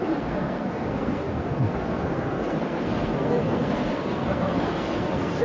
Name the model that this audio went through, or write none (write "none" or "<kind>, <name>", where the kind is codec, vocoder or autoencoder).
codec, SNAC